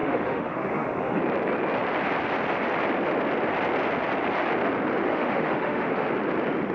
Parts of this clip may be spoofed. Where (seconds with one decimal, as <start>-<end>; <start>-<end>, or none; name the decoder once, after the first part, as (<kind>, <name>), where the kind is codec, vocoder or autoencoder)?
0.0-1.2 (autoencoder, DAC-VAE); 5.0-6.1